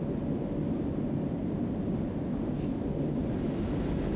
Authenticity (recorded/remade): recorded